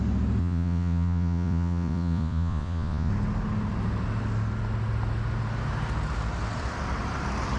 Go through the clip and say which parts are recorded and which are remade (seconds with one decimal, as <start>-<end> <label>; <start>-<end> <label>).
0.0-0.4 recorded; 0.4-3.1 remade; 3.1-7.6 recorded